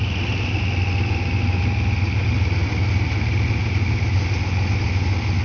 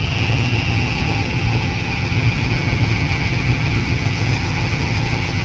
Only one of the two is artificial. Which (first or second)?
second